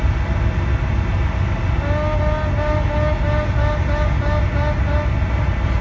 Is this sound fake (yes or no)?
no